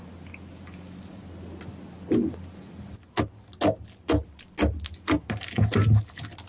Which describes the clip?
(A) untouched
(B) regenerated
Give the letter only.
A